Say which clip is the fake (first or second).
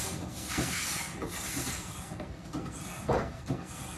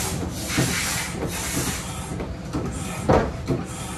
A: first